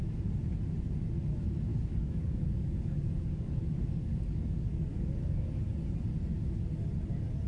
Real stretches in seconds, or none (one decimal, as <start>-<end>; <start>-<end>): 0.0-1.7; 5.7-7.5